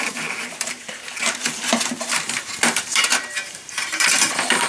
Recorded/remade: remade